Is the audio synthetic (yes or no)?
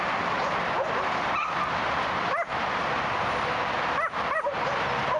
no